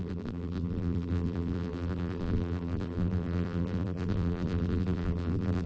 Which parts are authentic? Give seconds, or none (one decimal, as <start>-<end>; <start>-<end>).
none